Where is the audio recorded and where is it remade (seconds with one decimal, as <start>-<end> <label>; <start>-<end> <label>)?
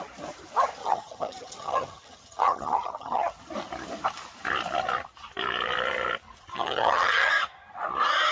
0.0-0.8 recorded; 0.8-3.3 remade; 3.3-6.5 recorded; 6.5-7.3 remade; 7.3-8.3 recorded